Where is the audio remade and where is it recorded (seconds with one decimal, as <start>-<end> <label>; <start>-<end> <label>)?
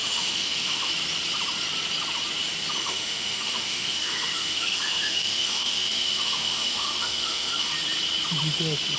0.0-0.9 remade; 0.9-2.8 recorded; 2.8-7.7 remade; 7.7-9.0 recorded